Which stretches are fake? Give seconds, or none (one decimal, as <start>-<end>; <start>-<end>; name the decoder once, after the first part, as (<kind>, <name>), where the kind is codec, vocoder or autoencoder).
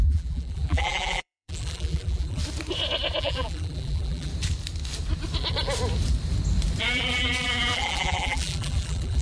0.0-2.4 (vocoder, BigVGAN v2); 3.2-4.3; 6.8-9.2